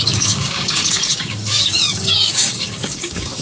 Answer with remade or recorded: remade